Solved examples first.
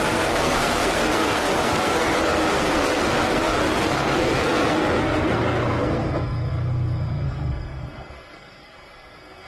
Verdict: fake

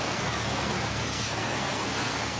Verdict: fake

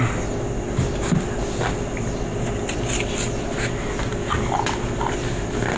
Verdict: real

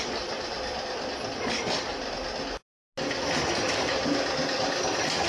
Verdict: real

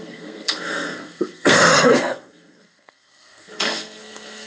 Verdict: fake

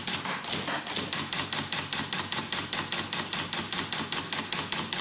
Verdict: real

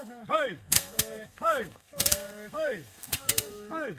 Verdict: fake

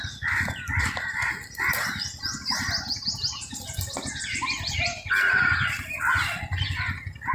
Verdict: real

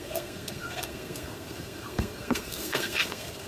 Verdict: fake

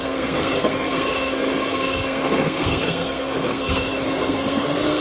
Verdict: fake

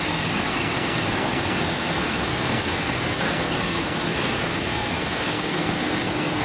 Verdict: fake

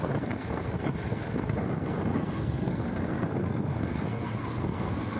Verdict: fake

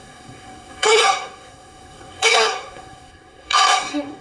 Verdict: fake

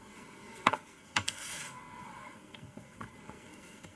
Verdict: fake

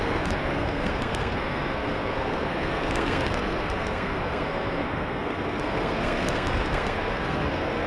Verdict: fake